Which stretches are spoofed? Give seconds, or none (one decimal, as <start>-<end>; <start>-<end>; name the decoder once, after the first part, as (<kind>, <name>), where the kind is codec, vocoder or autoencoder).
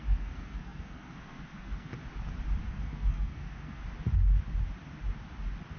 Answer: 0.0-1.9 (codec, SNAC); 2.7-3.8